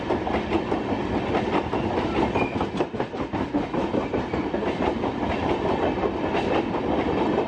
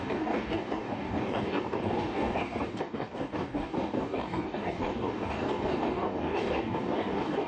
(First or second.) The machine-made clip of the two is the second